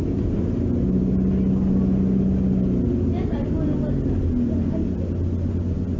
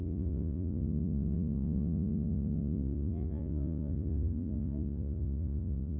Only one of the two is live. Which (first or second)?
first